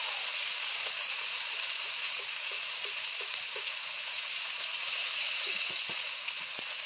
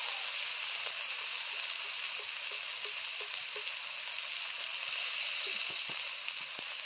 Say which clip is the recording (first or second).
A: second